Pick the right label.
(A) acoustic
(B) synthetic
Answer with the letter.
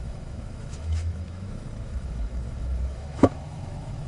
B